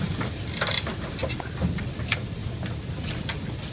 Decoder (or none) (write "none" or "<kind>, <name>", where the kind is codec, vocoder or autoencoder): none